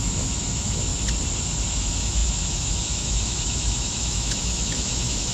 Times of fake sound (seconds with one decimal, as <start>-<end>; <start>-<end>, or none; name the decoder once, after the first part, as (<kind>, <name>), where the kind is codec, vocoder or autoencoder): 0.0-0.9 (autoencoder, DAC-VAE); 1.7-5.3